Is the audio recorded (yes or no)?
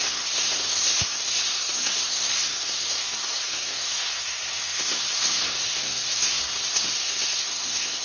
no